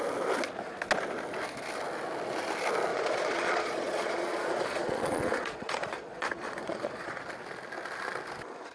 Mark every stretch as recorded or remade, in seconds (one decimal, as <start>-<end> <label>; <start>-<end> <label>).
0.0-2.9 recorded; 2.9-7.2 remade; 7.2-8.7 recorded